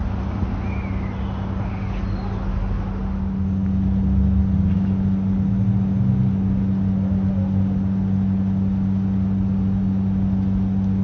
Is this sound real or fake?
real